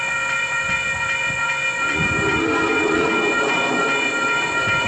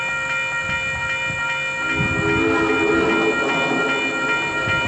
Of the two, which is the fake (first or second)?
first